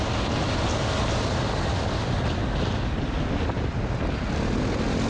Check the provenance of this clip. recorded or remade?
recorded